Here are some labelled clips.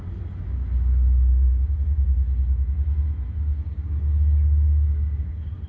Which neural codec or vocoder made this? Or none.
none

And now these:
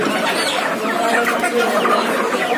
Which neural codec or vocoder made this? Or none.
none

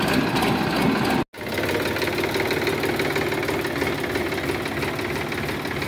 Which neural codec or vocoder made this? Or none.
none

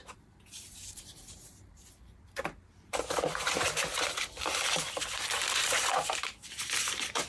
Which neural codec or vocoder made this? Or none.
vocoder, BigVGAN v2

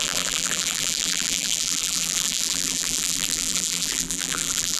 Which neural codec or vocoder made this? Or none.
vocoder, BigVGAN v2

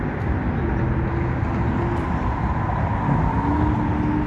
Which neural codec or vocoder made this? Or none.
none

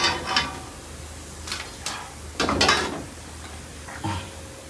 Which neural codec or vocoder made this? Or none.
none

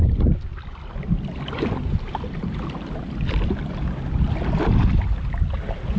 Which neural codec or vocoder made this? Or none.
none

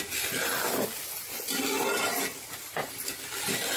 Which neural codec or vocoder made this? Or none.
none